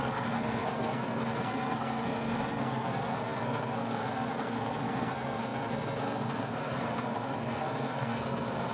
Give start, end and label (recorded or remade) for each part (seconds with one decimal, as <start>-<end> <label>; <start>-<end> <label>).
0.0-8.7 remade